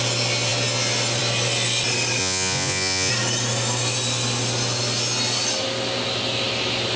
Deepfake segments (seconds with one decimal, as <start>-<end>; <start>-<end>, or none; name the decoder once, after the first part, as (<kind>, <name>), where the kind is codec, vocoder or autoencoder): 2.2-3.1 (vocoder, Vocos)

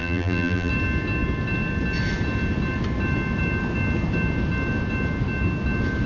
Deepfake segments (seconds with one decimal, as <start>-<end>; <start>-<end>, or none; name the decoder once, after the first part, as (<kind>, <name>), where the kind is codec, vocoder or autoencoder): 0.0-0.7 (vocoder, BigVGAN v2)